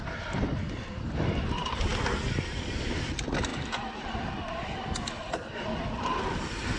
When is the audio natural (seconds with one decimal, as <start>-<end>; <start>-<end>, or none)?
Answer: 0.0-6.8